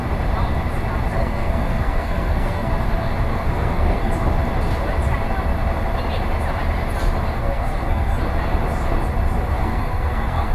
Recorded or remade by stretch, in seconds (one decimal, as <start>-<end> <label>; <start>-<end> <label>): 0.0-1.2 recorded; 1.2-2.7 remade; 2.7-3.3 recorded; 3.3-4.1 remade; 4.1-7.4 recorded; 7.4-8.2 remade; 8.2-9.5 recorded; 9.5-10.5 remade

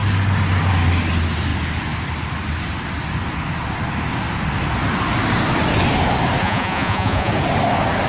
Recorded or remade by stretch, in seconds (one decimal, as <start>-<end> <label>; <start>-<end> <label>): 0.0-6.4 recorded; 6.4-7.3 remade; 7.3-8.1 recorded

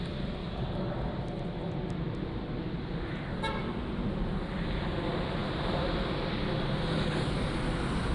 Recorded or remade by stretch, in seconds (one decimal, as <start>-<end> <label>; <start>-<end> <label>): 0.0-0.4 recorded; 0.4-0.9 remade; 0.9-8.1 recorded

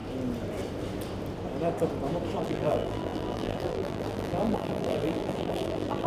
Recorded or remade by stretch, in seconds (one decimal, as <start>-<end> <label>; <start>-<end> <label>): 0.0-2.4 recorded; 2.4-6.1 remade

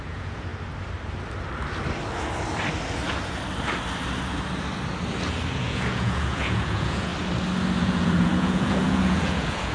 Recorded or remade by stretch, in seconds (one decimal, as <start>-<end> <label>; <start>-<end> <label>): 0.0-0.5 remade; 0.5-5.5 recorded; 5.5-7.1 remade; 7.1-7.8 recorded; 7.8-9.7 remade

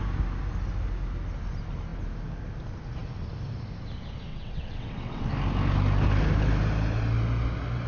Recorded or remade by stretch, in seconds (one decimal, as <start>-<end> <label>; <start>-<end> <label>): 0.0-4.3 recorded; 4.3-5.3 remade; 5.3-7.9 recorded

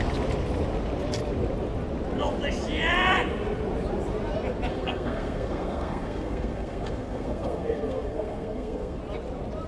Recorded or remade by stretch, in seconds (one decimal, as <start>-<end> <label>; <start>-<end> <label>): 0.0-4.7 recorded; 4.7-9.0 remade; 9.0-9.7 recorded

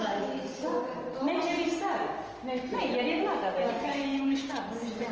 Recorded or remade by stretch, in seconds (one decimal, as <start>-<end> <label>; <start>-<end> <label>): 0.0-0.9 remade; 0.9-3.7 recorded; 3.7-5.1 remade